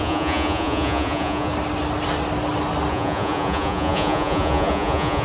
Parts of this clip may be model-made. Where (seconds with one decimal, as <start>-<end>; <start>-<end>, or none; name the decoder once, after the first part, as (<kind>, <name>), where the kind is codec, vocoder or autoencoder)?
0.0-1.5 (vocoder, Vocos); 2.9-5.2